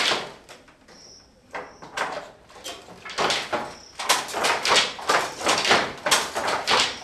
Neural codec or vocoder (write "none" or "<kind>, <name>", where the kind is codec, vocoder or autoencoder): none